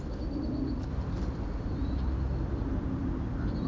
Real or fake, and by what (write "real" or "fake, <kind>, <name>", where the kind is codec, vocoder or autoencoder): real